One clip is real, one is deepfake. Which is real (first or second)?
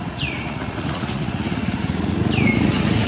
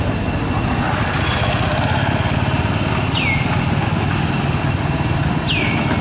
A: second